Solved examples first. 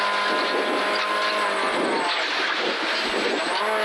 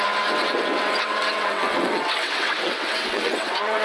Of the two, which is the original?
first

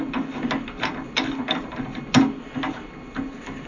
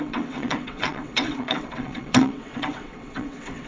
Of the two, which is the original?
first